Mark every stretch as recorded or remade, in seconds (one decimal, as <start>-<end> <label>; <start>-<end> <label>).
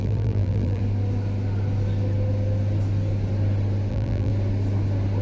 0.0-0.8 remade; 0.8-3.9 recorded; 3.9-4.3 remade; 4.3-5.2 recorded